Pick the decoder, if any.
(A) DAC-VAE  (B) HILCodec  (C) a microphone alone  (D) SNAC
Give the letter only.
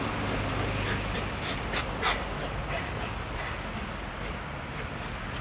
C